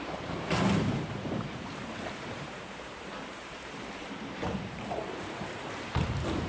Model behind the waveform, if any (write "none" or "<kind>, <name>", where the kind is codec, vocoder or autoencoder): vocoder, BigVGAN v2